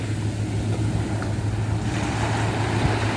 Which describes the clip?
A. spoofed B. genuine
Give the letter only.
B